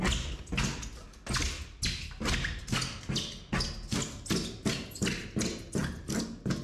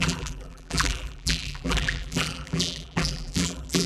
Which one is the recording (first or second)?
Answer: first